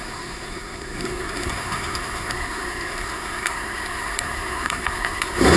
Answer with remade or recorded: remade